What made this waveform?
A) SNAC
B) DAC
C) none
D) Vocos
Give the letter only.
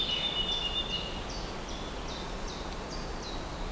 C